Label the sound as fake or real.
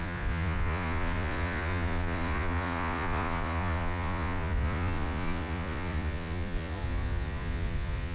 fake